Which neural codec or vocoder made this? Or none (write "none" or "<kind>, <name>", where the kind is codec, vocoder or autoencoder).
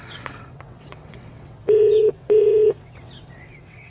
vocoder, WaveNeXt